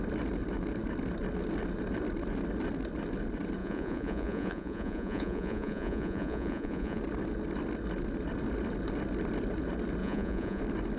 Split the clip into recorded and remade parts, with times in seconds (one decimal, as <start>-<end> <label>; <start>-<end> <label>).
0.0-3.6 recorded; 3.6-7.0 remade; 7.0-10.0 recorded; 10.0-10.6 remade; 10.6-11.0 recorded